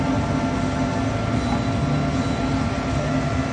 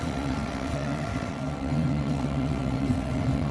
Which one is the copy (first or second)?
second